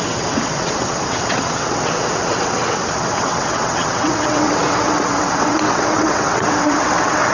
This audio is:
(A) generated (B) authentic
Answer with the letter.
A